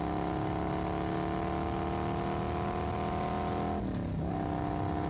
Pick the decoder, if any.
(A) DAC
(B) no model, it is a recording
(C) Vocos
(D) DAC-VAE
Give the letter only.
B